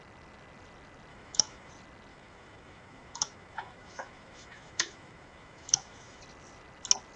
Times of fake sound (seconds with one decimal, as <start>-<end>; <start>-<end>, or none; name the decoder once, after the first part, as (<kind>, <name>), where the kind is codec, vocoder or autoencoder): 1.1-1.7 (autoencoder, DAC-VAE); 2.1-6.2